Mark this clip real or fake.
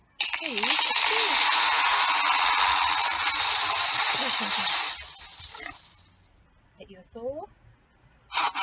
real